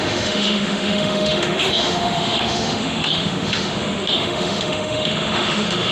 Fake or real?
fake